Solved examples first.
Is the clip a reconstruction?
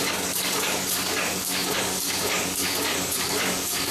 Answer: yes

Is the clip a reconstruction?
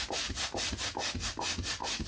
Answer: no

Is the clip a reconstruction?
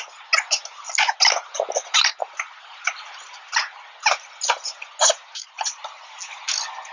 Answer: no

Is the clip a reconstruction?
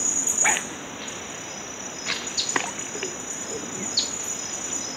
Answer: no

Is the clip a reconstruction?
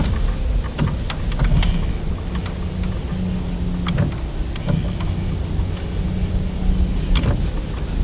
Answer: no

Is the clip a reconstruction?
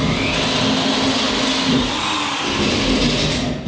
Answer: no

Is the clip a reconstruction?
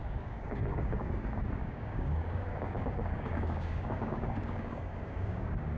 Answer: yes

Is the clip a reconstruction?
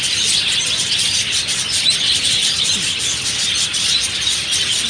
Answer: no